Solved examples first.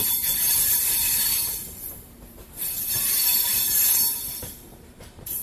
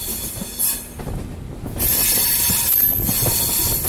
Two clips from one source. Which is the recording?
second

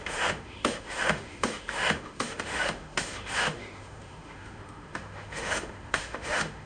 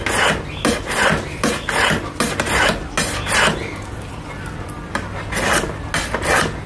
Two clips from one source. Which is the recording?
second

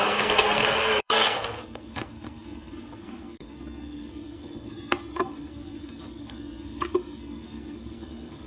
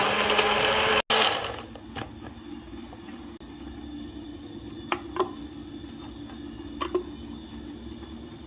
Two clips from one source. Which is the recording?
second